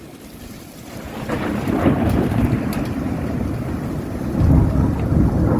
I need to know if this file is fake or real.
fake